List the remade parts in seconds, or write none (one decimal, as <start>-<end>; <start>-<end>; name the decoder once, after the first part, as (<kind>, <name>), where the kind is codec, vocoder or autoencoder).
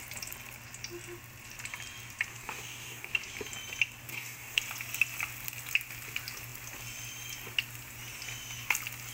2.3-3.1 (codec, DAC); 4.1-4.6